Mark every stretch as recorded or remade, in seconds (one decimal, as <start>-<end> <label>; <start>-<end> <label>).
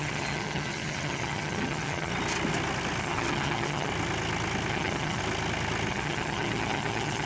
0.0-2.1 remade; 2.1-3.0 recorded; 3.0-3.9 remade; 3.9-4.7 recorded; 4.7-5.2 remade; 5.2-5.9 recorded; 5.9-7.3 remade